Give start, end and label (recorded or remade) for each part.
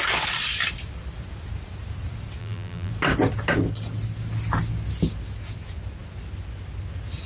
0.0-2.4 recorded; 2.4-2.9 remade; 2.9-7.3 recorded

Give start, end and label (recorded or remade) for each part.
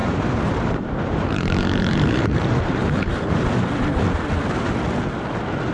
0.0-3.4 remade; 3.4-5.7 recorded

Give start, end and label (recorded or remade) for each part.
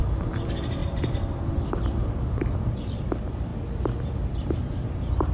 0.0-0.8 remade; 0.8-1.5 recorded; 1.5-3.5 remade; 3.5-4.3 recorded; 4.3-5.3 remade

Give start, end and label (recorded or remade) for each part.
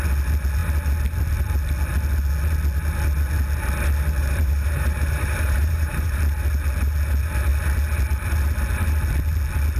0.0-4.2 recorded; 4.2-6.2 remade; 6.2-9.8 recorded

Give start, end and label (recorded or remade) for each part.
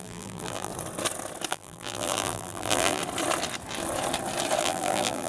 0.0-0.7 remade; 0.7-1.5 recorded; 1.5-3.0 remade; 3.0-4.6 recorded; 4.6-5.3 remade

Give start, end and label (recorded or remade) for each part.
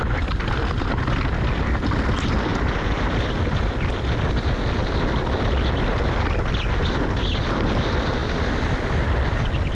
0.0-9.7 recorded